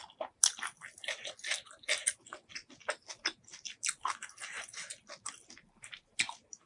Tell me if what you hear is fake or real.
real